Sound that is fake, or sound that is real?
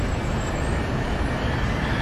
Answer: real